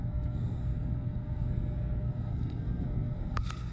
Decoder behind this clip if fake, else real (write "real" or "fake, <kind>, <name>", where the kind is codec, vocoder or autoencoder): fake, codec, SNAC